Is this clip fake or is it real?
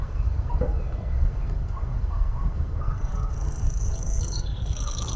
fake